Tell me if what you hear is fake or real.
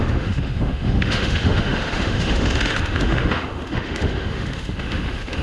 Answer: fake